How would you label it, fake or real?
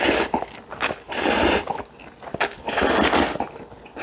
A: real